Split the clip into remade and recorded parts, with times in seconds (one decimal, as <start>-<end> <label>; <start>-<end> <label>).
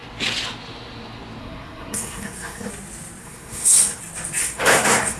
0.0-1.4 recorded; 1.4-2.7 remade; 2.7-3.2 recorded; 3.2-4.0 remade; 4.0-4.4 recorded; 4.4-5.2 remade